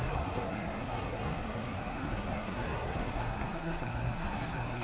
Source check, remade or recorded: remade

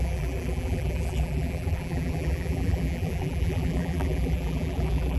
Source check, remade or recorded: remade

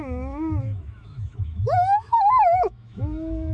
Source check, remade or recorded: remade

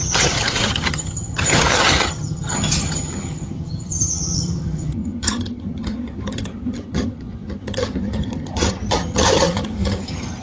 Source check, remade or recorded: remade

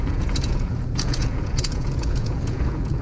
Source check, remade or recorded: remade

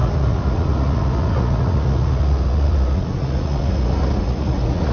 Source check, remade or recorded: remade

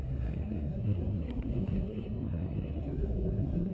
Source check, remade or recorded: remade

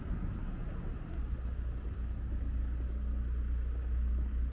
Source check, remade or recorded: recorded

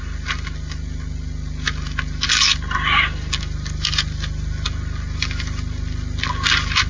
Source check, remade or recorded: recorded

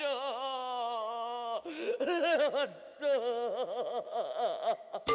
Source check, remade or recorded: remade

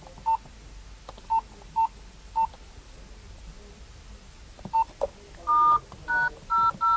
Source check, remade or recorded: recorded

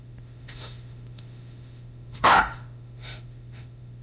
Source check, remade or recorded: remade